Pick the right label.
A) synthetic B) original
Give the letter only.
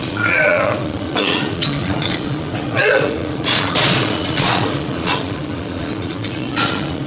A